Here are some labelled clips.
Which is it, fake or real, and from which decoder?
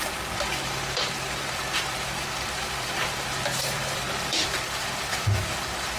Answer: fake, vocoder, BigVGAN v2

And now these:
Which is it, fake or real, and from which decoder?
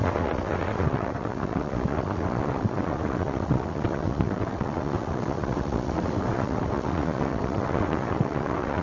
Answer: fake, vocoder, WaveNeXt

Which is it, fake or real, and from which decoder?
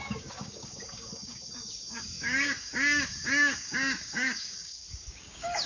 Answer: fake, codec, DAC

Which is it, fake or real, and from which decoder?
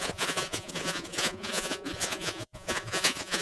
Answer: fake, vocoder, Vocos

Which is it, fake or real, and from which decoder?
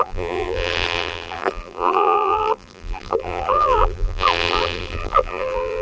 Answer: fake, vocoder, BigVGAN v2